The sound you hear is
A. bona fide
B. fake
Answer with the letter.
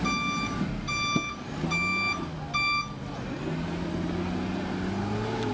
A